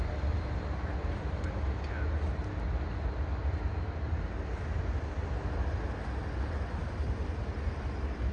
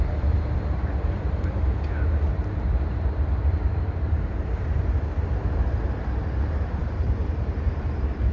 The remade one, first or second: second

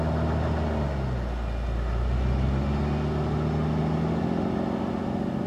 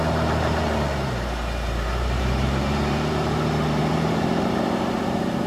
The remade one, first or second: second